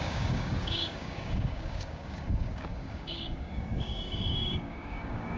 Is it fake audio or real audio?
fake